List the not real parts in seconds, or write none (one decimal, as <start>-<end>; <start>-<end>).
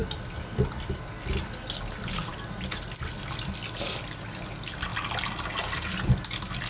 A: none